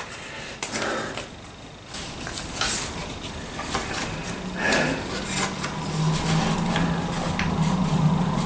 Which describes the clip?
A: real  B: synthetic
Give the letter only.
A